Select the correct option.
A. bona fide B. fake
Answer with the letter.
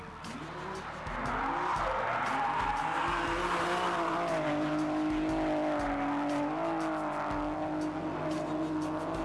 A